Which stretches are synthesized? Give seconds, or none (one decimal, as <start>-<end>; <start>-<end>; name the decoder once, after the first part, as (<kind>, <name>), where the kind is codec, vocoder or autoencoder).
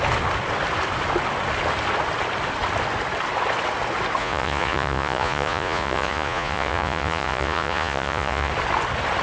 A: 4.2-8.5 (vocoder, Vocos)